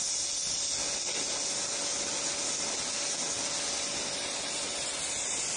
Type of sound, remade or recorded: recorded